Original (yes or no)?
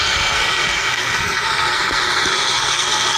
no